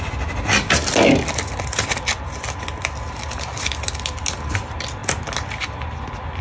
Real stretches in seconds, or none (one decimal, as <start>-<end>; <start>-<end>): 0.0-6.4